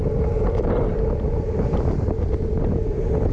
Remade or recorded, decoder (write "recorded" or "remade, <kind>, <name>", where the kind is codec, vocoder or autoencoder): recorded